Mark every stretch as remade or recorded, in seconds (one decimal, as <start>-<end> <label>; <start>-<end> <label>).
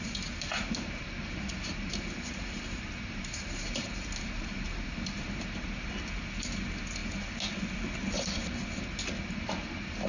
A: 0.0-1.7 recorded; 1.7-5.9 remade; 5.9-10.1 recorded